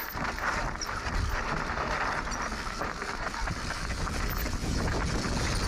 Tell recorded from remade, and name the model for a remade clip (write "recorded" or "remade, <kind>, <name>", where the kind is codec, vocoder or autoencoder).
recorded